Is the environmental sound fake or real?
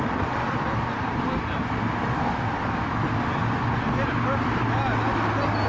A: real